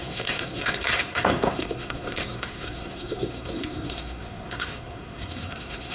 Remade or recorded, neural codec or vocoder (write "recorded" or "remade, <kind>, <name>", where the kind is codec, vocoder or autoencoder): remade, codec, SNAC